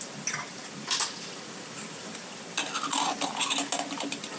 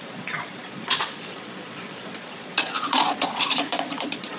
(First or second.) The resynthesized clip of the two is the second